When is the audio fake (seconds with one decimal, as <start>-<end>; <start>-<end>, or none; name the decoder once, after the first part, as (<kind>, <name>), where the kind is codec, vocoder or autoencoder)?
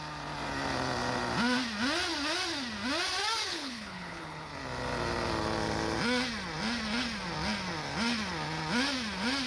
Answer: 3.5-4.5 (codec, HILCodec)